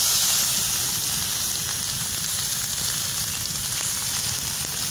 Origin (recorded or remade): recorded